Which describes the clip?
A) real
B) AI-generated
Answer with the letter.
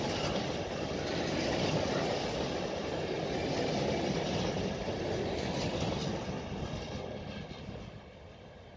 A